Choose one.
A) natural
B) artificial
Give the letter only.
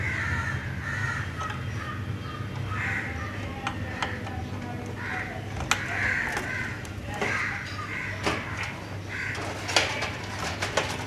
A